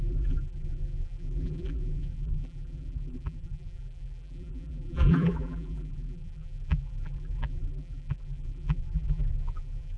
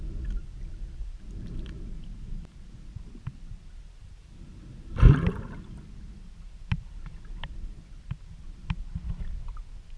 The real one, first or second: second